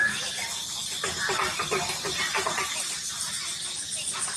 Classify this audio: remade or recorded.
recorded